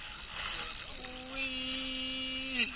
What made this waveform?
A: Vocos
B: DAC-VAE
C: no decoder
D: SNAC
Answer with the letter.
C